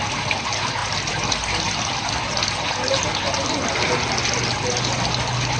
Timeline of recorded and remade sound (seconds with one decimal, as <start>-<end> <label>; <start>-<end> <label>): 0.0-5.6 recorded